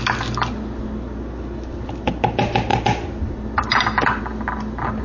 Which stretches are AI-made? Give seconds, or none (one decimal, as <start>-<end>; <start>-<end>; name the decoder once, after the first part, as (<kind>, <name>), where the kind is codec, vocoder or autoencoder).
none